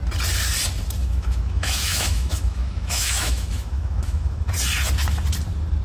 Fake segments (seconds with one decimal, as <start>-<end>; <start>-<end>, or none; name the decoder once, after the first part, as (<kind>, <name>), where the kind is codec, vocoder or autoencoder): 1.0-4.5 (autoencoder, DAC-VAE)